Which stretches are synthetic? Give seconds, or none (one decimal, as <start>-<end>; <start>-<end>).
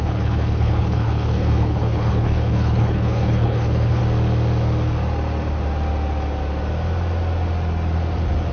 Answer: 0.0-4.0